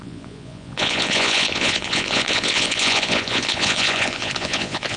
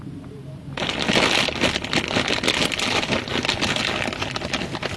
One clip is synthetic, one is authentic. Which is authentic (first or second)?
second